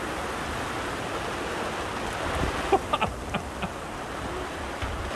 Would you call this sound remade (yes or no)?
no